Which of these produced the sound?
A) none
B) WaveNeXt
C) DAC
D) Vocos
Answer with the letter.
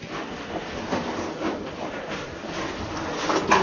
A